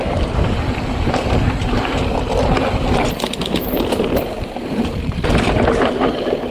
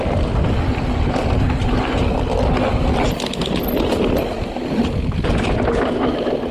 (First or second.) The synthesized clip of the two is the first